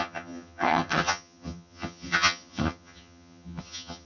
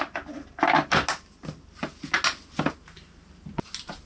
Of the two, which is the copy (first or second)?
first